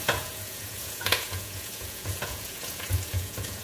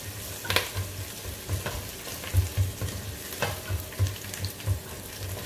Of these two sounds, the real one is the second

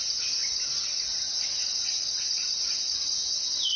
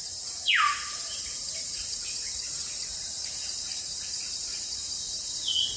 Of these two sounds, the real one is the first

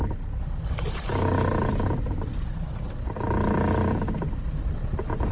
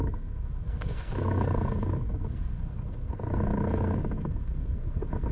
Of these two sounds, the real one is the first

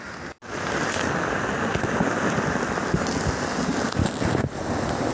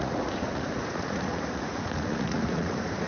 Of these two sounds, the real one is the first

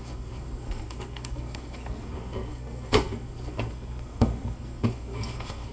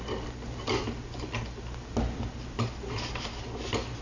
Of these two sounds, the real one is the second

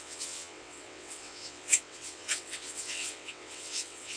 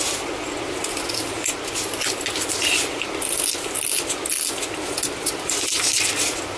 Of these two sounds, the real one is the second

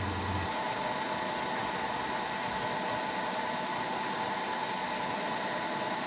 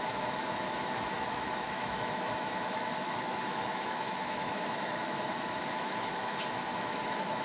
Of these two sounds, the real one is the first